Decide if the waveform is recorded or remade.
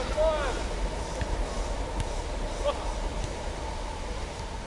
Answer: recorded